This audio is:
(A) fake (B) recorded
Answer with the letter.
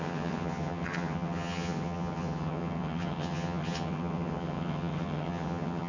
A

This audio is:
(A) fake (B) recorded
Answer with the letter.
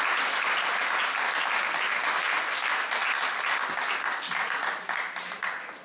B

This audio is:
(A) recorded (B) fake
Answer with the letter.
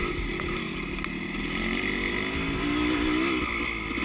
A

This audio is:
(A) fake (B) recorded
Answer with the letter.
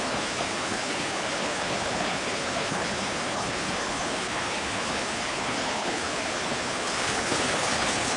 A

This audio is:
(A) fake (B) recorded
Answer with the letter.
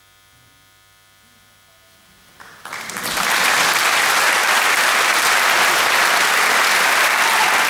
B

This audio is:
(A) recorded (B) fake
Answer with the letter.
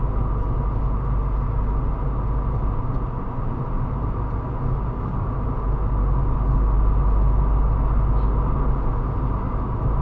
A